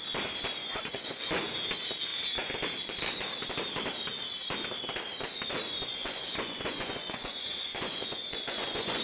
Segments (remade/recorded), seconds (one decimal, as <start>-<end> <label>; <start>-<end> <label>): 0.0-0.6 recorded; 0.6-1.3 remade; 1.3-5.9 recorded; 5.9-9.0 remade